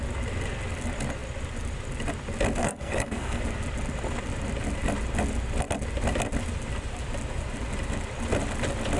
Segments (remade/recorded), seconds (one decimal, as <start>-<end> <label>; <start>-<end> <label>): 0.0-2.6 recorded; 2.6-3.4 remade; 3.4-9.0 recorded